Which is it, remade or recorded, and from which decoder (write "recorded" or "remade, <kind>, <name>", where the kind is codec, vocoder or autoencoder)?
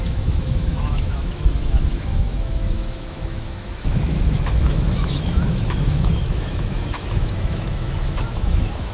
remade, autoencoder, DAC-VAE